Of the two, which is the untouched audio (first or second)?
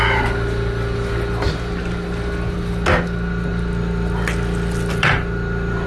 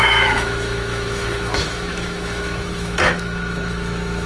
first